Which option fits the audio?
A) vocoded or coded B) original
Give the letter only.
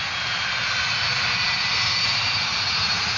B